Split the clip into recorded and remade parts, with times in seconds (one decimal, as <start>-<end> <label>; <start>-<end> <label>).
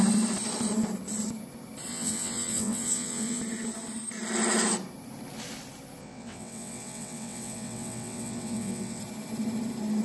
0.0-1.9 recorded; 1.9-3.4 remade; 3.4-6.0 recorded; 6.0-9.0 remade; 9.0-10.0 recorded